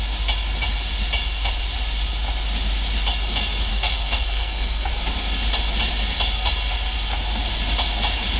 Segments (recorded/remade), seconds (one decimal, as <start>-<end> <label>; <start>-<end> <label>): 0.0-3.7 recorded; 3.7-4.9 remade; 4.9-8.4 recorded